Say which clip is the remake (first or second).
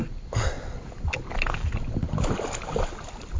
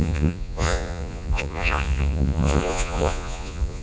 second